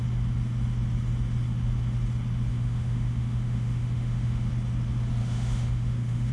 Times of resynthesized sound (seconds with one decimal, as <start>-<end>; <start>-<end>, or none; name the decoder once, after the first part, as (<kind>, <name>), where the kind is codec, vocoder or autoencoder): 2.5-4.5 (autoencoder, DAC-VAE); 5.2-6.3